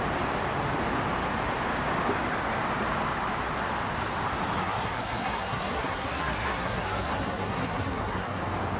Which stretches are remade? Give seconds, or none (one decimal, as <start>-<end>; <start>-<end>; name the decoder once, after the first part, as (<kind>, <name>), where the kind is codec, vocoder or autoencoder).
4.6-8.4 (codec, SNAC)